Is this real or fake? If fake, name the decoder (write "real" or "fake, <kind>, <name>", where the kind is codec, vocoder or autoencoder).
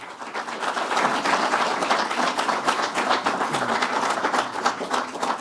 real